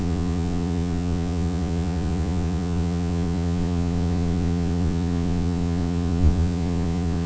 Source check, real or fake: fake